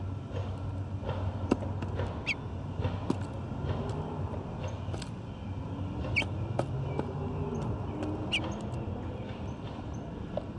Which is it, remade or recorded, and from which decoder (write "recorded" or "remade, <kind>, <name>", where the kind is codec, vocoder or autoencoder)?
recorded